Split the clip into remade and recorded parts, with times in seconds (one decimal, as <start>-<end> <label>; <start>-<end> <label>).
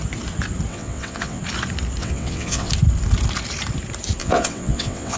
0.0-0.7 recorded; 0.7-1.4 remade; 1.4-2.0 recorded; 2.0-2.7 remade; 2.7-4.2 recorded; 4.2-5.2 remade